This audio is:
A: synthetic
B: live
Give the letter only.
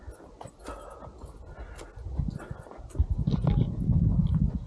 B